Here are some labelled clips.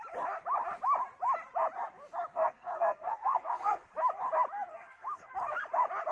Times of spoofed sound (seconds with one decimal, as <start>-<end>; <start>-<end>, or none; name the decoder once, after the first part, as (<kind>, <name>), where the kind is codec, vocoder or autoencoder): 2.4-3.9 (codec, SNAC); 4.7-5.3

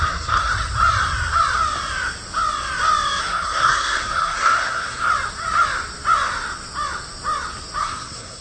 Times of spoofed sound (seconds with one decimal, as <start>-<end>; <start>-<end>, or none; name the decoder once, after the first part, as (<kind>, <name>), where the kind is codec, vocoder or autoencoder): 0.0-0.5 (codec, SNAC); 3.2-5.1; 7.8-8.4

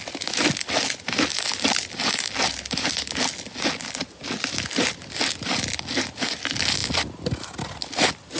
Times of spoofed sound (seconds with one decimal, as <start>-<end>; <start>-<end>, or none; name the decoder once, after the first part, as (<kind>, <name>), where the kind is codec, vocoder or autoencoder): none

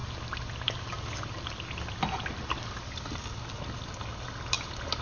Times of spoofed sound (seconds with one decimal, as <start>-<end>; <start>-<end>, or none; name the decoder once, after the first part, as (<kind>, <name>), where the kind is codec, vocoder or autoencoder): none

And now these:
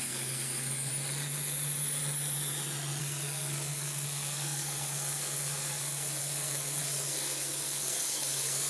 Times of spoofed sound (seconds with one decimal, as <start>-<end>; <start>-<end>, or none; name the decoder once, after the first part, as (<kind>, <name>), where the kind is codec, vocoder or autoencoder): 0.0-0.9 (codec, SNAC); 3.0-8.7

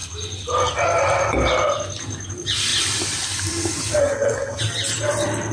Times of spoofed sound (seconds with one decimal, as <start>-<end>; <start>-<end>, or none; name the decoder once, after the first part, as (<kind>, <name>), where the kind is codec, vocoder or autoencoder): 4.0-4.6 (codec, SNAC)

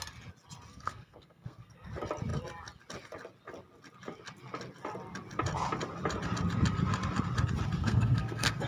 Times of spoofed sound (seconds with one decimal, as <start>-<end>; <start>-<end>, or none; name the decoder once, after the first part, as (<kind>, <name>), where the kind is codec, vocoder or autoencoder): 0.7-1.9 (codec, SNAC); 7.8-8.7